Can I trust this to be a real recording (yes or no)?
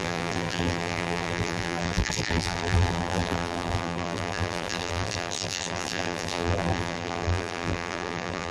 no